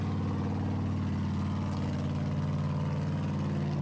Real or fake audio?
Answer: real